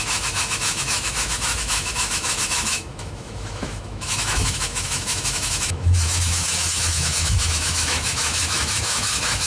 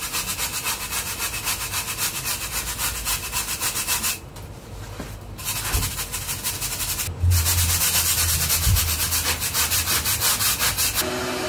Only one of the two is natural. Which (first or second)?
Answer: second